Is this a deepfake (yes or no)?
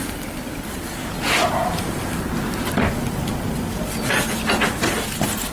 no